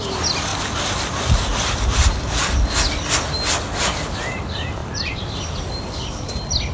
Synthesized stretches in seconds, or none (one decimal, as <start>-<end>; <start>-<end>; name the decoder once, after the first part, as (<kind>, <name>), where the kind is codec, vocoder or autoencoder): none